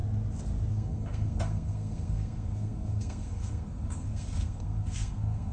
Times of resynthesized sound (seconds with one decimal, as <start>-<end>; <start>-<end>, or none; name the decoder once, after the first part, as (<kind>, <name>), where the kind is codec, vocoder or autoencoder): 0.7-5.5 (codec, SNAC)